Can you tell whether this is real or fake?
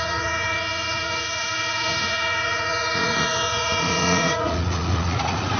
fake